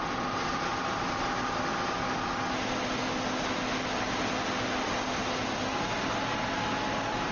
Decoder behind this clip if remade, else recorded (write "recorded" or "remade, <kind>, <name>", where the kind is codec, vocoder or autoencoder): recorded